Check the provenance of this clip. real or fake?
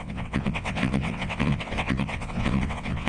fake